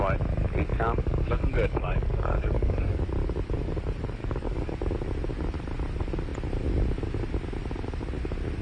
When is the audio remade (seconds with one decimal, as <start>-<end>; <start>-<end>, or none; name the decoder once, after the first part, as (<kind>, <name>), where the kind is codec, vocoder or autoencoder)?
0.7-3.0 (codec, DAC); 4.2-4.7